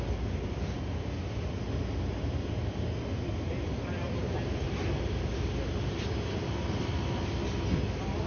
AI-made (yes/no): no